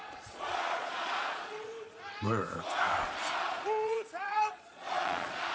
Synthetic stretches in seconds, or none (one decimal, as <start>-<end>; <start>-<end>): 0.0-1.7; 3.4-5.5